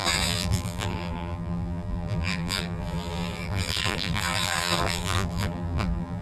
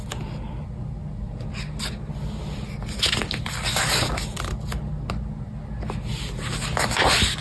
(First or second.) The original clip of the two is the second